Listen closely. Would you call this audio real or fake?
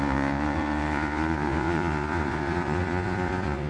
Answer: fake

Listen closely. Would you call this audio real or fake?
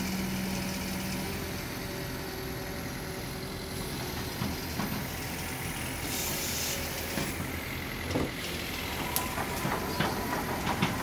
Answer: real